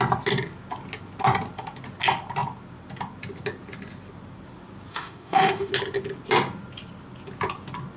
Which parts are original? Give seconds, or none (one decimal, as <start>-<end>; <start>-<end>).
0.0-4.9; 5.7-8.0